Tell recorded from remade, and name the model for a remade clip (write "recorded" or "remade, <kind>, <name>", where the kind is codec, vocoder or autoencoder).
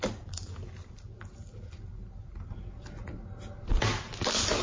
recorded